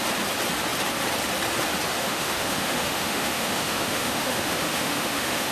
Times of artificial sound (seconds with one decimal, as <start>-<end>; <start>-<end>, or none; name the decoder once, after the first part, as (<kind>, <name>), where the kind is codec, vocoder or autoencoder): 2.0-5.5 (autoencoder, DAC-VAE)